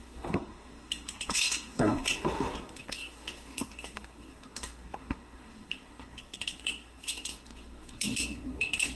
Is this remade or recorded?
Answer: remade